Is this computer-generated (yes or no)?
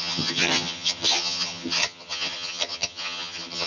yes